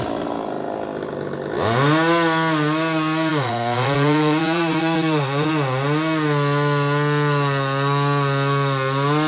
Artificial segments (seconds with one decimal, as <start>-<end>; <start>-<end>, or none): 3.3-5.5